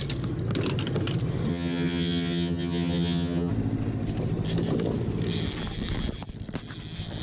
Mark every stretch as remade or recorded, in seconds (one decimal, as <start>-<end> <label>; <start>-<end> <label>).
0.0-1.5 recorded; 1.5-3.5 remade; 3.5-7.2 recorded